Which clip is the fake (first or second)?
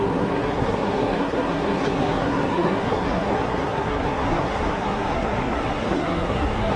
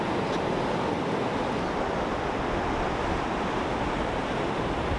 first